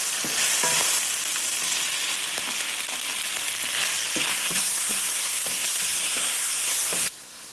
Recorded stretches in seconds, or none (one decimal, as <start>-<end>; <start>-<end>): 0.0-4.3

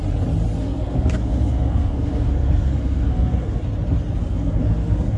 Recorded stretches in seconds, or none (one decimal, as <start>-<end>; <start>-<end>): 0.0-0.5; 3.6-4.2

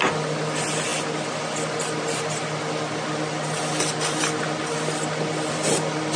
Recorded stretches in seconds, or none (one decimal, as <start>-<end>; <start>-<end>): 0.0-6.2

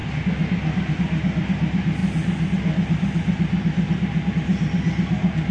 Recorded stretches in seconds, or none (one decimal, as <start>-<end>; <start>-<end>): 0.0-5.5

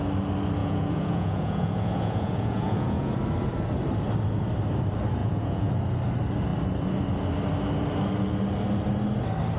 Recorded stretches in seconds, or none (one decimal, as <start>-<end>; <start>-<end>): 0.0-0.6; 3.1-5.2; 5.7-9.6

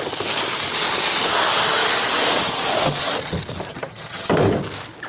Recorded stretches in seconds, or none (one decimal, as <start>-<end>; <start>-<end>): 0.0-3.7; 4.3-5.1

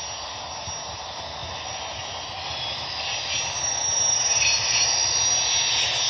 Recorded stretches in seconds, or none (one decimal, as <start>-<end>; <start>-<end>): 0.0-6.1

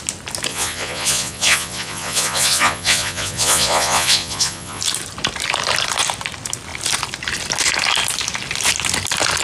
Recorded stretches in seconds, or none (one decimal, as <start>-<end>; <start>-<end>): 0.0-0.5; 4.8-9.4